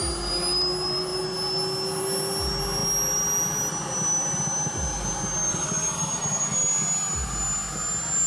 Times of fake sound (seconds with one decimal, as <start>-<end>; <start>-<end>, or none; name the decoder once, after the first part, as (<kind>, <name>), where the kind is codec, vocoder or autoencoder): none